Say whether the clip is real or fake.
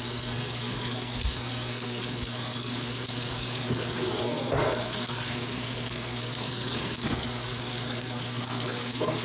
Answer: fake